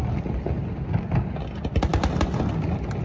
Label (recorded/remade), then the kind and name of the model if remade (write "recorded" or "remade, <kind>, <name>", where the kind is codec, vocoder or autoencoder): recorded